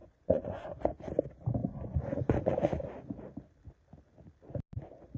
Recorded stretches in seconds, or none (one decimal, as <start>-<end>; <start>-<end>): 1.1-1.6; 3.1-5.2